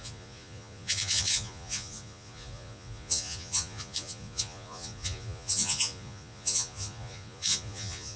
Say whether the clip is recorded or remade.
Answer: remade